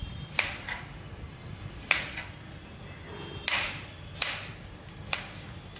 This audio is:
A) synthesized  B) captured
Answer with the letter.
B